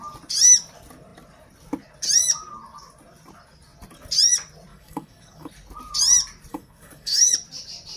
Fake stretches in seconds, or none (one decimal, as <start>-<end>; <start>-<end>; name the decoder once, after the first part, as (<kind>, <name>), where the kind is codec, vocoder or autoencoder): 4.7-5.5 (codec, DAC); 6.5-7.3